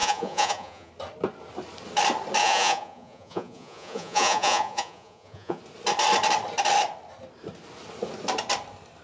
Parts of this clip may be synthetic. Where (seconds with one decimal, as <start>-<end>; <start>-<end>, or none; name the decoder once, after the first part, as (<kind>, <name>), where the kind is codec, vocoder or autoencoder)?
0.0-0.9 (vocoder, Vocos); 2.4-5.6